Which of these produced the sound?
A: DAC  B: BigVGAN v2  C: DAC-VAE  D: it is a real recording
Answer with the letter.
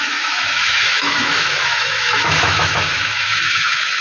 C